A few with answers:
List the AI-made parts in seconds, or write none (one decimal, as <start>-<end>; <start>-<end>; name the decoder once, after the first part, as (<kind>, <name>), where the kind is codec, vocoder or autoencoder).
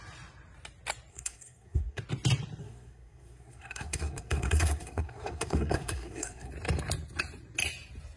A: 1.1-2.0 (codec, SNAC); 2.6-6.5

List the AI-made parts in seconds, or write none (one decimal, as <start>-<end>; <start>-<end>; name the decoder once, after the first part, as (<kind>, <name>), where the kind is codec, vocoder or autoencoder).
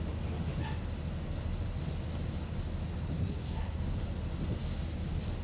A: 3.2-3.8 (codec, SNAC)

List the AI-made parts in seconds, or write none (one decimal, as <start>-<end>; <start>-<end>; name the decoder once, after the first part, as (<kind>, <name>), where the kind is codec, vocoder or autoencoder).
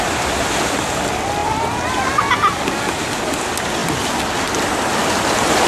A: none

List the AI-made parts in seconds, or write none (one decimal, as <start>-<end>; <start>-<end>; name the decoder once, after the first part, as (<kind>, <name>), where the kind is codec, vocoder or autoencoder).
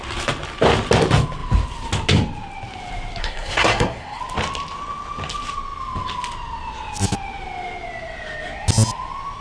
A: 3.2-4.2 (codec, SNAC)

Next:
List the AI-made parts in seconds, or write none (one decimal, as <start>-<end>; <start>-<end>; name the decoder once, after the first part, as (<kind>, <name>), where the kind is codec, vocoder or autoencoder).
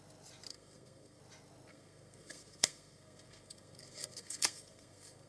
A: 0.5-1.2 (codec, SNAC); 1.7-5.3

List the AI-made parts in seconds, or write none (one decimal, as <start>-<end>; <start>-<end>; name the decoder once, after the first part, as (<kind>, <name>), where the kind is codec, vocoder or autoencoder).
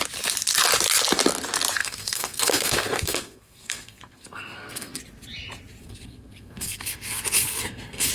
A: 1.8-5.0 (codec, SNAC); 5.8-8.1